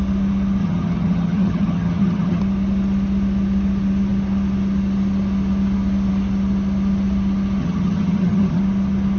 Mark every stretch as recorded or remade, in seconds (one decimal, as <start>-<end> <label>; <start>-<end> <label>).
0.0-0.6 recorded; 0.6-2.4 remade; 2.4-7.6 recorded; 7.6-8.6 remade; 8.6-9.2 recorded